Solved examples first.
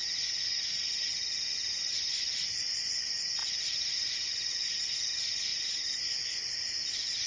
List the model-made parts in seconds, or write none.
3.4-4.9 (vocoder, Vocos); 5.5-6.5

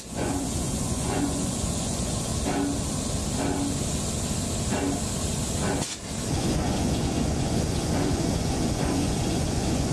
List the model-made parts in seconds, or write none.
0.0-2.3 (vocoder, Vocos); 6.4-9.9

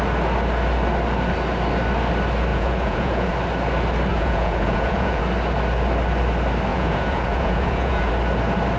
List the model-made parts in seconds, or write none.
2.5-3.3 (vocoder, Vocos); 4.1-5.2; 6.7-8.1